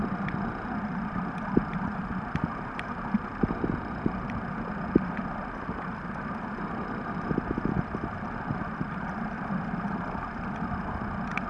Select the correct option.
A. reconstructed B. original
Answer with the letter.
B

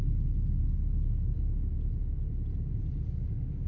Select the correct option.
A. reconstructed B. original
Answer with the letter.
B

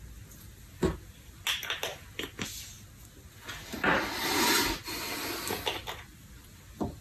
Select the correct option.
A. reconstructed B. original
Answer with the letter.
B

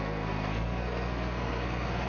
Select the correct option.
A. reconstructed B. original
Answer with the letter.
A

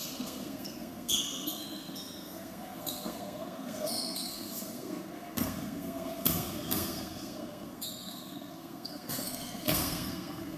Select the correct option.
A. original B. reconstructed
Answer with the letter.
B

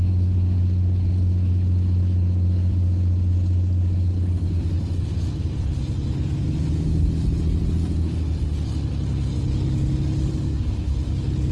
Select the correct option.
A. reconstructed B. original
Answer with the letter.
B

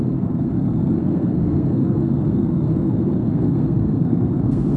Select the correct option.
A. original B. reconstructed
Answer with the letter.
B